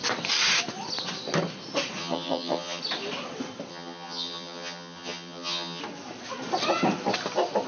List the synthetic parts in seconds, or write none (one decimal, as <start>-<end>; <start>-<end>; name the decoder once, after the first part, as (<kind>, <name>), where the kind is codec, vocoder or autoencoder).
2.0-2.8 (vocoder, HiFi-GAN); 3.7-5.8